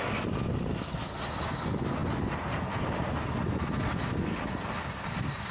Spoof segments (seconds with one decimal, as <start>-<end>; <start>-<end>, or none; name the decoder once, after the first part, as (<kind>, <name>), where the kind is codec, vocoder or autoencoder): none